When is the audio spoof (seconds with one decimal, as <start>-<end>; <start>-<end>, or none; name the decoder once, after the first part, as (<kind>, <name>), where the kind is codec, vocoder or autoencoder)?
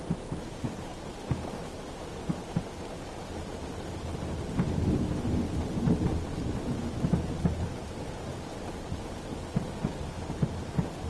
none